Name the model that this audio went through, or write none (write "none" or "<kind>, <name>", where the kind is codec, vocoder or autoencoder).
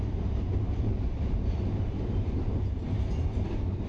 vocoder, BigVGAN v2